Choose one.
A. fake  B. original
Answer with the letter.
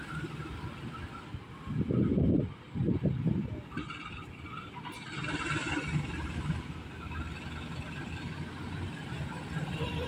B